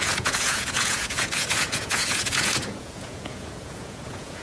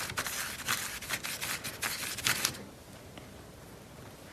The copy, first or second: first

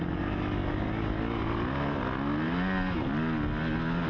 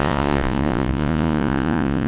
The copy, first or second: second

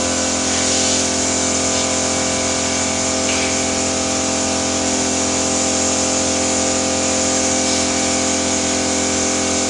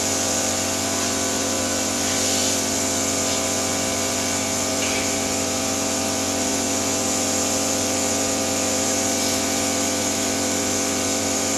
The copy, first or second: second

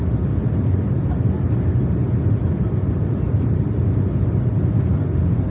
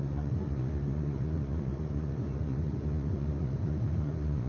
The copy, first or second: second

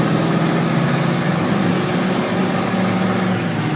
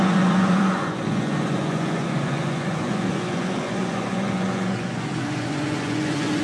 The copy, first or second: second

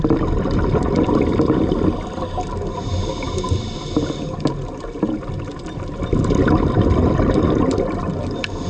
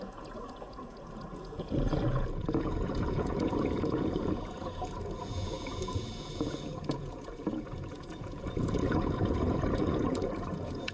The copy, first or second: second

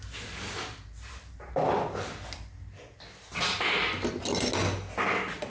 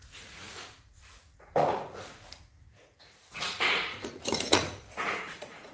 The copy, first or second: second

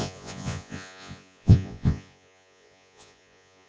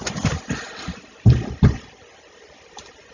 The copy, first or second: first